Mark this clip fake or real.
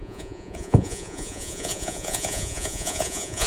fake